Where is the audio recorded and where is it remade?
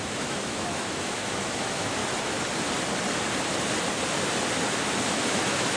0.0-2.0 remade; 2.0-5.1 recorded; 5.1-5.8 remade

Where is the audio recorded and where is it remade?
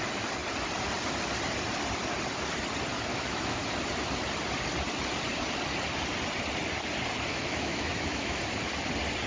0.0-3.1 recorded; 3.1-3.6 remade; 3.6-7.3 recorded; 7.3-8.4 remade; 8.4-9.3 recorded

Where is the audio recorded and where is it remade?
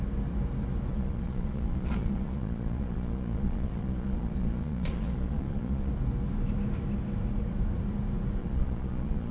0.0-0.9 recorded; 0.9-5.9 remade; 5.9-8.4 recorded; 8.4-9.3 remade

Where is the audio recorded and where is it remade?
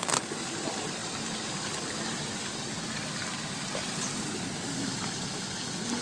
0.0-6.0 recorded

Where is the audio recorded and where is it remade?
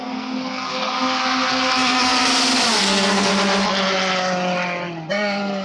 0.0-2.3 remade; 2.3-2.8 recorded; 2.8-3.3 remade; 3.3-5.1 recorded; 5.1-5.6 remade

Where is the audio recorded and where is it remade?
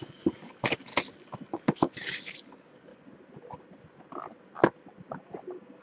0.0-0.9 remade; 0.9-1.5 recorded; 1.5-2.9 remade; 2.9-5.8 recorded